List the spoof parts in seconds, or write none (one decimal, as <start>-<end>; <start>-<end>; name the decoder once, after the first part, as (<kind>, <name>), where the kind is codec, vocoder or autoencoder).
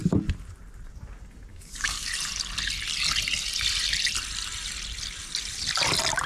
1.5-2.1 (codec, DAC)